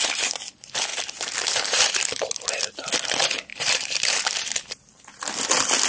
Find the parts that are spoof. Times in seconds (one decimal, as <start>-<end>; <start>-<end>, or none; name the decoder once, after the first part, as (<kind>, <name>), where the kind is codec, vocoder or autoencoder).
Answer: 0.9-1.9 (vocoder, BigVGAN v2); 3.5-5.2